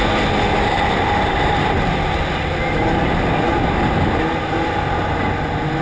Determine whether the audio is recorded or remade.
recorded